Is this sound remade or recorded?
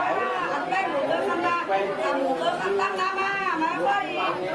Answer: recorded